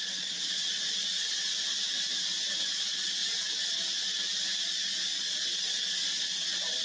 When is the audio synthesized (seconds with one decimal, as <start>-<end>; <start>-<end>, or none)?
0.0-1.1; 2.8-3.2; 4.6-6.8